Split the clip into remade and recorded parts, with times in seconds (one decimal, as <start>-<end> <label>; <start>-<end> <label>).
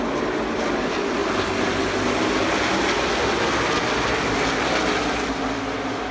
0.0-6.1 recorded